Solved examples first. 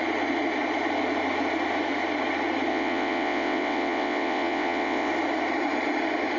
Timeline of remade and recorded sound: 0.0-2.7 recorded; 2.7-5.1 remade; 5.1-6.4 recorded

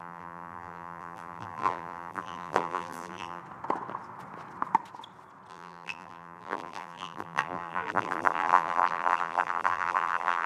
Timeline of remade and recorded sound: 0.0-3.4 remade; 3.4-5.5 recorded; 5.5-10.5 remade

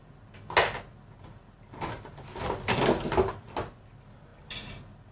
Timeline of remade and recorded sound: 0.0-5.1 recorded

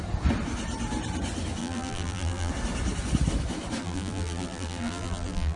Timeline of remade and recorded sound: 0.0-1.6 recorded; 1.6-2.5 remade; 2.5-3.8 recorded; 3.8-5.6 remade

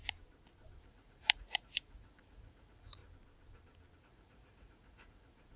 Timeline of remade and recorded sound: 0.0-0.8 recorded; 0.8-3.0 remade; 3.0-4.0 recorded; 4.0-5.6 remade

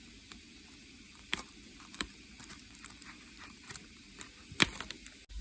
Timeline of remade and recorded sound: 0.0-0.8 recorded; 0.8-4.0 remade; 4.0-5.4 recorded

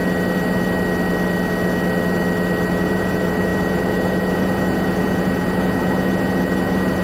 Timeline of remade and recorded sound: 0.0-2.7 recorded; 2.7-7.0 remade

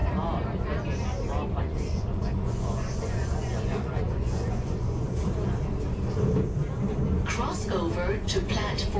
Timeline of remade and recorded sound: 0.0-1.6 recorded; 1.6-5.1 remade; 5.1-8.1 recorded; 8.1-9.0 remade